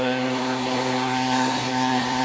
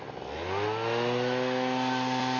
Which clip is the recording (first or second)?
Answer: second